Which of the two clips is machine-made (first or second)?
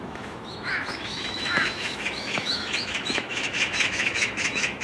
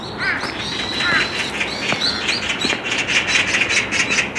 first